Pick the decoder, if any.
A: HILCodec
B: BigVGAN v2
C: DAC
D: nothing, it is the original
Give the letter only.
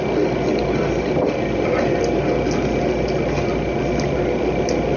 D